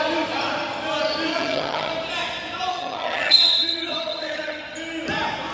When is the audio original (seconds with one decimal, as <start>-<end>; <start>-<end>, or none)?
0.0-1.3; 1.9-2.7; 4.6-5.5